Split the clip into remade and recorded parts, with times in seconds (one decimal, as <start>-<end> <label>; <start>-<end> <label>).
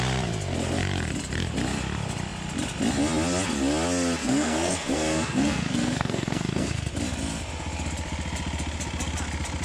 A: 0.0-4.2 recorded; 4.2-6.9 remade; 6.9-9.6 recorded